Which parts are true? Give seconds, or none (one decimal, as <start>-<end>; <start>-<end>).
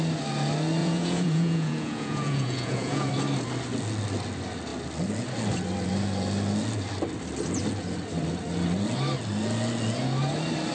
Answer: 0.0-0.8; 3.1-10.7